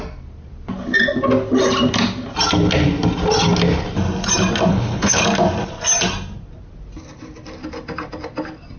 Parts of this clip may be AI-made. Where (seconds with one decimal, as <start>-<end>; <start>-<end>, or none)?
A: 4.7-5.2